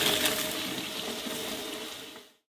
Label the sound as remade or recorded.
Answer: recorded